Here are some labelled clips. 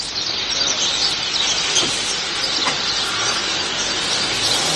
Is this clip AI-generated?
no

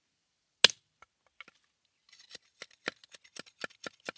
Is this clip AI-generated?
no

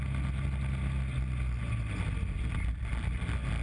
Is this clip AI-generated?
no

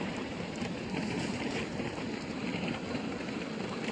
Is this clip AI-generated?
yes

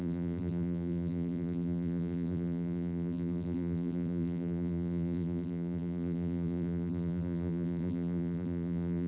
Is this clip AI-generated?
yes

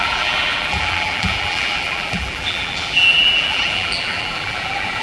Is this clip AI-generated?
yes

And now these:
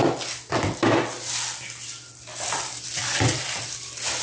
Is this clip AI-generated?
no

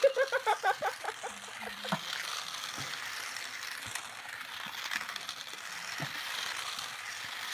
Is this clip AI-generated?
yes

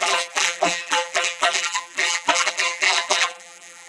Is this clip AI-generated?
yes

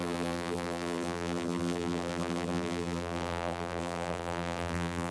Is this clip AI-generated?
yes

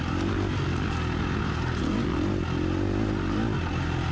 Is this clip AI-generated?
no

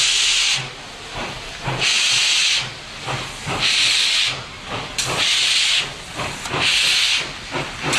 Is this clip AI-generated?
no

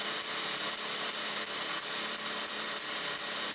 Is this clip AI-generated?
yes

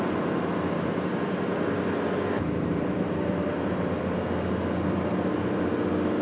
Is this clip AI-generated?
no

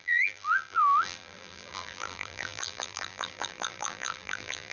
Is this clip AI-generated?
yes